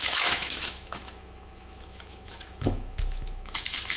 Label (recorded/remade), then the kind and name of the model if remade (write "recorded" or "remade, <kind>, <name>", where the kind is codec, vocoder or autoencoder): remade, autoencoder, DAC-VAE